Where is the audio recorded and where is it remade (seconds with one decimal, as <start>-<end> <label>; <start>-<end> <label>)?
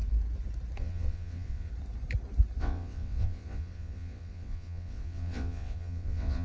0.0-0.8 recorded; 0.8-1.7 remade; 1.7-2.6 recorded; 2.6-6.4 remade